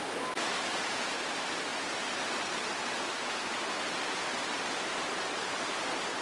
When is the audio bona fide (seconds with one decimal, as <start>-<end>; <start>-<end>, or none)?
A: 0.0-6.2